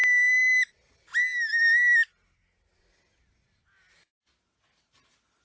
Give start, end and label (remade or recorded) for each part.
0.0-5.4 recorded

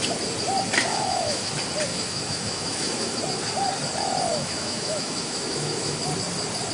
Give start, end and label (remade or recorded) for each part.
0.0-0.9 recorded; 0.9-1.5 remade; 1.5-1.9 recorded; 1.9-3.2 remade; 3.2-4.3 recorded; 4.3-6.0 remade; 6.0-6.7 recorded

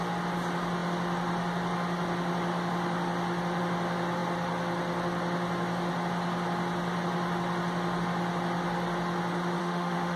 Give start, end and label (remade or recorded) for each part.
0.0-9.6 recorded; 9.6-10.2 remade

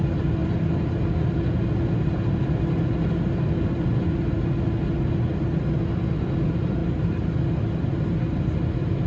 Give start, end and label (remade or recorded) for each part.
0.0-9.1 recorded

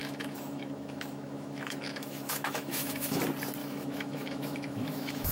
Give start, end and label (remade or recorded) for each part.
0.0-3.2 remade; 3.2-3.6 recorded; 3.6-5.3 remade

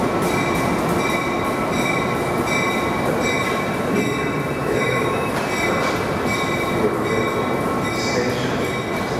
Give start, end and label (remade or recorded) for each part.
0.0-4.6 recorded; 4.6-5.3 remade; 5.3-9.2 recorded